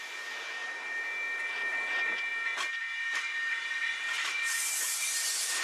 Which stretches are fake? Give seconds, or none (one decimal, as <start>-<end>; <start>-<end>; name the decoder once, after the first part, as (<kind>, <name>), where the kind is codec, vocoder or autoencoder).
none